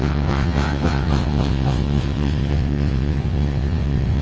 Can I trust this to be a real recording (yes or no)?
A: no